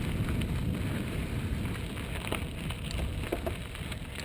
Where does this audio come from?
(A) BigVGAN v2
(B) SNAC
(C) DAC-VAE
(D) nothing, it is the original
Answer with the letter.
D